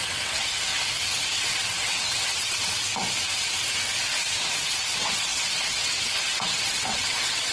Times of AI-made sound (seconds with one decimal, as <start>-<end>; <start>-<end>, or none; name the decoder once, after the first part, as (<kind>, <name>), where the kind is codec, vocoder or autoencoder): 0.0-0.7 (vocoder, WaveNeXt); 1.4-2.9; 4.4-7.5